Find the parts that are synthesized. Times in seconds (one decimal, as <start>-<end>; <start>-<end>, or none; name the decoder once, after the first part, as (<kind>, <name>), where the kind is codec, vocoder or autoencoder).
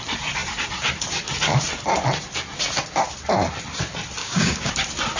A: 4.2-4.7 (codec, DAC)